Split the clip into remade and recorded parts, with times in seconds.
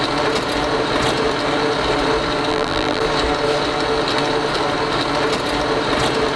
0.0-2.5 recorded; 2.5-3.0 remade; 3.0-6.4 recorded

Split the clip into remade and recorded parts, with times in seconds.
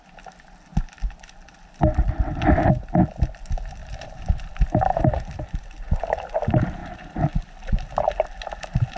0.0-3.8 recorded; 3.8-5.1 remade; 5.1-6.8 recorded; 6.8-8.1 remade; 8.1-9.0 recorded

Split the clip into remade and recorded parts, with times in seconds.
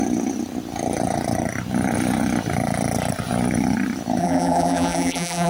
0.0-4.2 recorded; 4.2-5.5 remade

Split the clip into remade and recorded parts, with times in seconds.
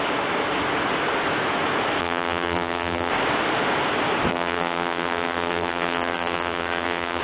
0.0-2.0 recorded; 2.0-3.1 remade; 3.1-4.3 recorded; 4.3-7.2 remade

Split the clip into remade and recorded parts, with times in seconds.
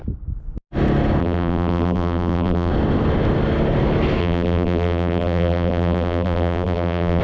0.0-1.2 recorded; 1.2-2.7 remade; 2.7-4.2 recorded; 4.2-7.2 remade